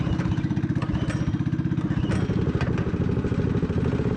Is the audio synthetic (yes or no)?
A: no